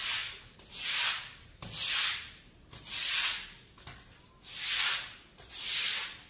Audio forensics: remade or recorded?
recorded